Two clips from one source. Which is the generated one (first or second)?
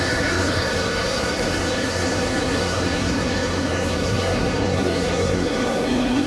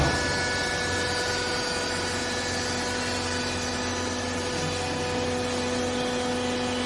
first